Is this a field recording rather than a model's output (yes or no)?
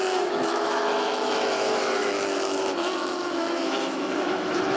no